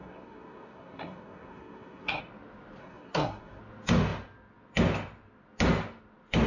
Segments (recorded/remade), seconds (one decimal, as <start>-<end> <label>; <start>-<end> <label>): 0.0-2.2 remade; 2.2-2.8 recorded; 2.8-3.6 remade; 3.6-6.5 recorded